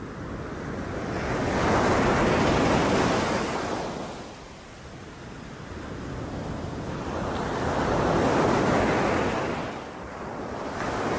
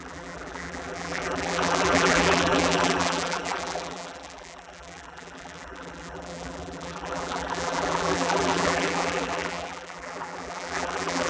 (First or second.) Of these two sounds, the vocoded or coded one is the second